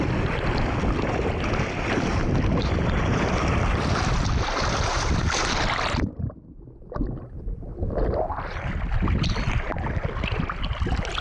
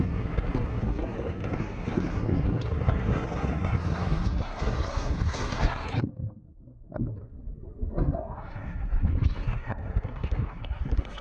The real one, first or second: first